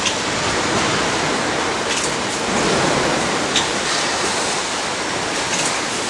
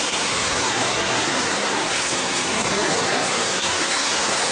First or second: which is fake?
second